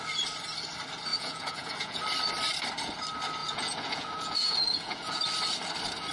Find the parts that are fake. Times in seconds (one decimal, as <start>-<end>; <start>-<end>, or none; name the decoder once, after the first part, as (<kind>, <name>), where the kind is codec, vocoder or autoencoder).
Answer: 1.1-2.0 (vocoder, Vocos); 3.4-5.2